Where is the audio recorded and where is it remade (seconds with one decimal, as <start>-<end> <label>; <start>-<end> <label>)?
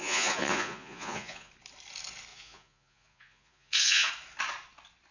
0.0-1.5 remade; 1.5-2.3 recorded; 2.3-4.1 remade; 4.1-5.1 recorded